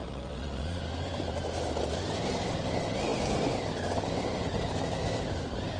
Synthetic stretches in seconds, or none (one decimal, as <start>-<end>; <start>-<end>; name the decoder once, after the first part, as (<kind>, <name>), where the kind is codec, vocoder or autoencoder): 0.0-0.8 (vocoder, Vocos)